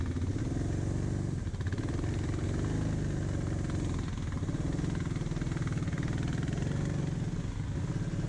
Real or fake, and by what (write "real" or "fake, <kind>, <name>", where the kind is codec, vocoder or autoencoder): real